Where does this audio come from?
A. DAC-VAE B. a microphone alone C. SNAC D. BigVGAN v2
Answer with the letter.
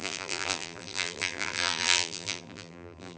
D